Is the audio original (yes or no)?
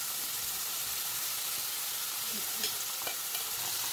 no